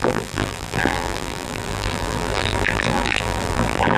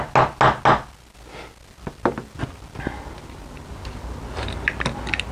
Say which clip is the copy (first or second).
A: first